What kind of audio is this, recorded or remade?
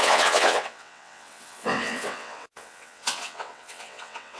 remade